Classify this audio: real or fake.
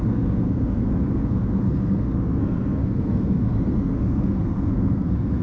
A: fake